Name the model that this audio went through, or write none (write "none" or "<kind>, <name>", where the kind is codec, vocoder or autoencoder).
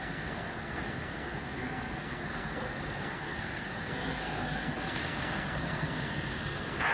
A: codec, SNAC